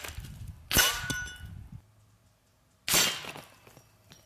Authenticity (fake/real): real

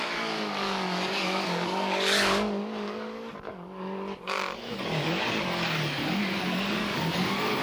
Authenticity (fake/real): fake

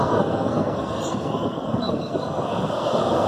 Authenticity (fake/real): fake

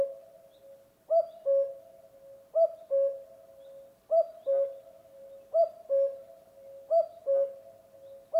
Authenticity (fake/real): real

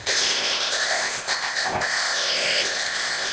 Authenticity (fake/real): fake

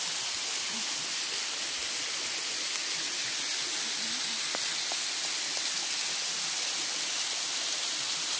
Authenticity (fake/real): real